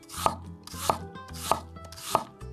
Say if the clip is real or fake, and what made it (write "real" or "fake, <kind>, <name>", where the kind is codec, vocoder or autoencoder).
real